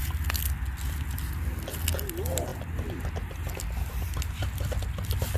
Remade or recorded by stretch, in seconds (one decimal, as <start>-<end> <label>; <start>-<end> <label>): 0.0-5.4 recorded